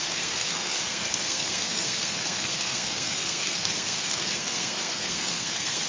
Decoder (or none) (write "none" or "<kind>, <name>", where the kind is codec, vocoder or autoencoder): codec, SNAC